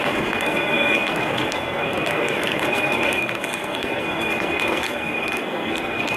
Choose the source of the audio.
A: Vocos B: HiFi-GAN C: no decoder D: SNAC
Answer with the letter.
D